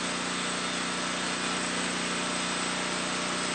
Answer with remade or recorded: recorded